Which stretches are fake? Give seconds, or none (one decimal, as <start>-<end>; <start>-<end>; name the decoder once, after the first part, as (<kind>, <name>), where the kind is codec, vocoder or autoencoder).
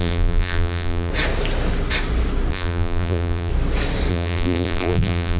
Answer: 0.0-1.1 (vocoder, BigVGAN v2); 2.5-3.5; 4.1-5.4